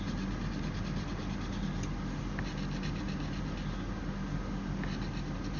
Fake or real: real